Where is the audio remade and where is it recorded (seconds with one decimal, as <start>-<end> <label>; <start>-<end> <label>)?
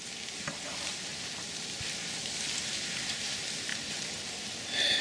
0.0-5.0 recorded